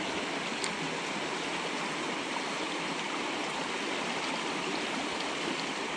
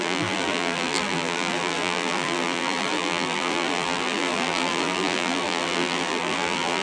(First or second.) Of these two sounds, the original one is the first